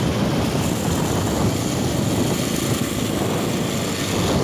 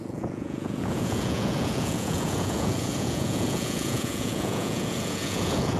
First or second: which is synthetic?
second